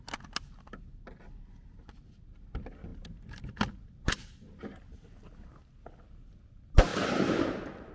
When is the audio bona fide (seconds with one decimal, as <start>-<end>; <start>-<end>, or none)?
0.0-6.9